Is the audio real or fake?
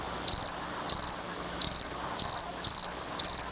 real